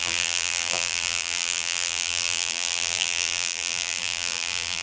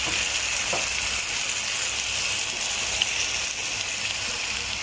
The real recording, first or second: second